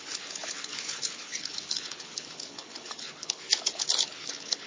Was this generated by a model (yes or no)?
yes